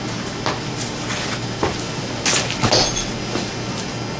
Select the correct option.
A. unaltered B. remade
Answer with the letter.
A